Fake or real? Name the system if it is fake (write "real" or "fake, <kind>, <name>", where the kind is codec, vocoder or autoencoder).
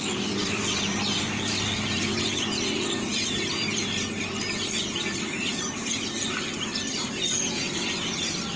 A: fake, vocoder, BigVGAN v2